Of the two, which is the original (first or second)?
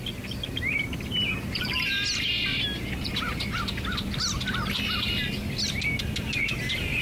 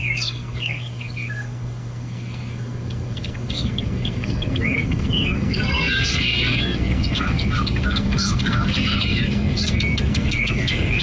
first